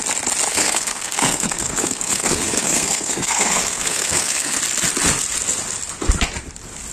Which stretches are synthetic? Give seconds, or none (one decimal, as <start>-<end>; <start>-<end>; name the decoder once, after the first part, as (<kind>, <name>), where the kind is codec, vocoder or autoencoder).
0.5-4.6 (codec, SNAC)